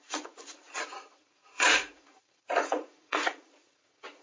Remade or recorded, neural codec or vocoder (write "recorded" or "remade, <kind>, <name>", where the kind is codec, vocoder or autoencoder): remade, vocoder, Vocos